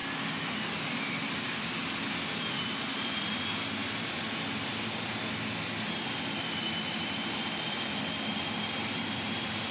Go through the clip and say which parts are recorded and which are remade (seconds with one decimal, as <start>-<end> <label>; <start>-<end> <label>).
0.0-9.7 recorded